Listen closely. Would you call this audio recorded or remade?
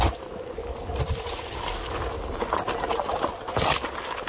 recorded